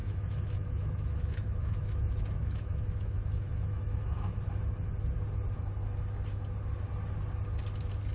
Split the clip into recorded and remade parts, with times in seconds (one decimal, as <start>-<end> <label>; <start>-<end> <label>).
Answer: 0.0-4.4 remade; 4.4-8.1 recorded